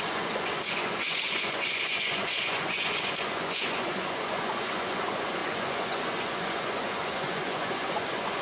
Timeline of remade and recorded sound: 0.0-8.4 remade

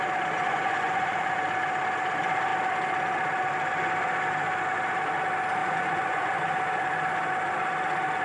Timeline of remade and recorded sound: 0.0-0.4 recorded; 0.4-1.2 remade; 1.2-5.6 recorded; 5.6-6.4 remade; 6.4-8.2 recorded